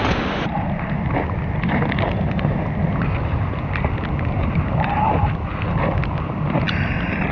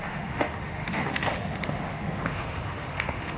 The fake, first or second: second